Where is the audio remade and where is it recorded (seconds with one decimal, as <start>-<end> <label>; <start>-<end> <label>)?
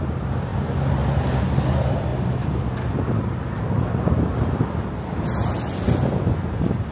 0.0-0.5 recorded; 0.5-1.4 remade; 1.4-6.9 recorded